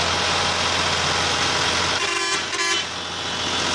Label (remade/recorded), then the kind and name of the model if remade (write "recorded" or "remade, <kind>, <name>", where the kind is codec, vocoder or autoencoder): recorded